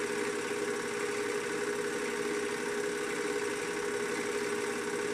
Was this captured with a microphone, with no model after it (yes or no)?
yes